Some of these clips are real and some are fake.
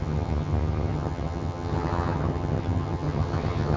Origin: fake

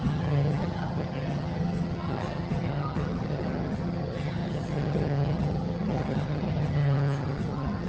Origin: fake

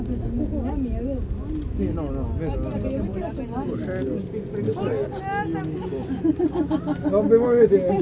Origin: real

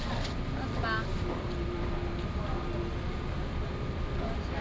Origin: real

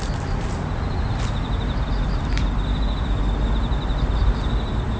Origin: real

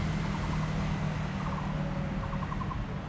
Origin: real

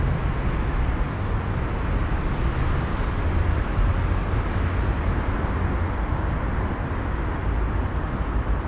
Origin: real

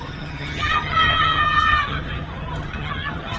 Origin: fake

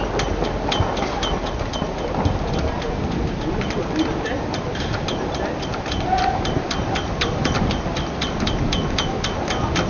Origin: real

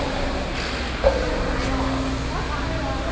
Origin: real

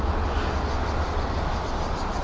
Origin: real